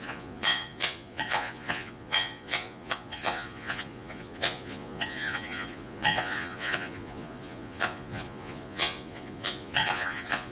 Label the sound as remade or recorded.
remade